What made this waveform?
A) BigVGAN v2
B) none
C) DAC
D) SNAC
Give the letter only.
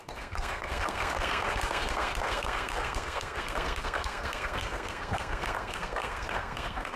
D